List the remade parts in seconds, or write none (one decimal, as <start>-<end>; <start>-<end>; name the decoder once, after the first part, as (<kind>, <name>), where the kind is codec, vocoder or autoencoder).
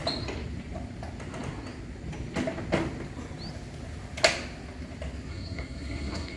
5.3-6.4 (codec, SNAC)